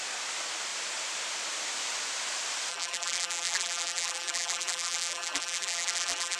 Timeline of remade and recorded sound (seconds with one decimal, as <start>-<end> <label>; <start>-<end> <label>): 0.0-2.7 recorded; 2.7-6.4 remade